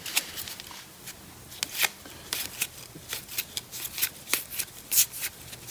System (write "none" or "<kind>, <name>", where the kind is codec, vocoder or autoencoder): none